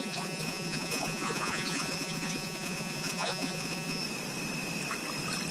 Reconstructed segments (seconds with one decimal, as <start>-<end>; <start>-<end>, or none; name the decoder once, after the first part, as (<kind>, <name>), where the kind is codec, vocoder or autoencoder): 0.0-4.0 (vocoder, Vocos)